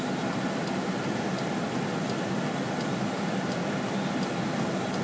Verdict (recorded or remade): recorded